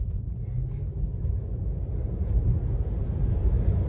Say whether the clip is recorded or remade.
recorded